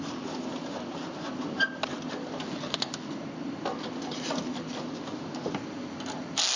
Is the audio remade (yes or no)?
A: no